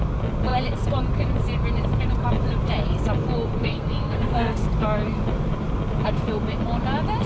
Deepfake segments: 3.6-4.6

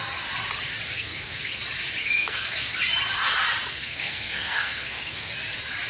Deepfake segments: 0.9-1.6; 2.0-2.7; 3.7-5.3

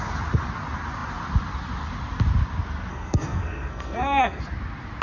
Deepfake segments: 2.9-4.4

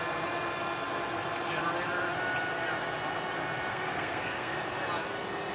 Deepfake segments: 3.7-4.6